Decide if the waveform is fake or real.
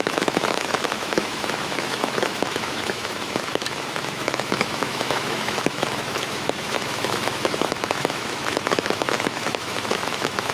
fake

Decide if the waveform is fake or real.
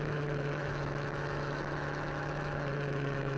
fake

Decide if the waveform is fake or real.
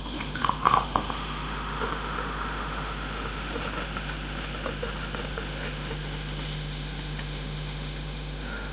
fake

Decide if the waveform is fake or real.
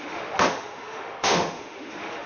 fake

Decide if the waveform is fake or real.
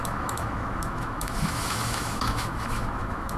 fake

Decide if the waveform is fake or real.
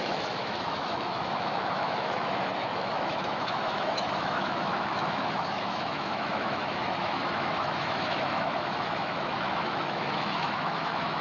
fake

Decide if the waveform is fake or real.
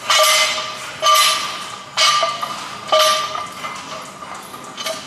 real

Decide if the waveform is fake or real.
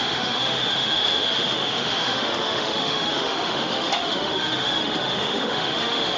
fake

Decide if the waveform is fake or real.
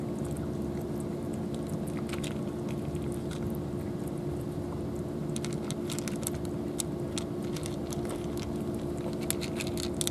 real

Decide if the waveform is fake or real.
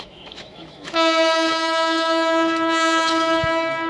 fake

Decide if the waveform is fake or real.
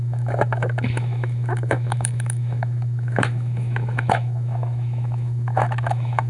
fake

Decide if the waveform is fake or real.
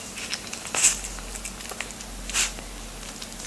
real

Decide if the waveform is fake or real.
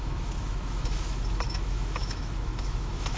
fake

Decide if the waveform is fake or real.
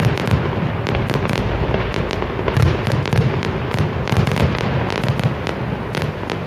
real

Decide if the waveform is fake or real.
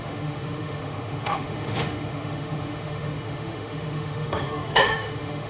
fake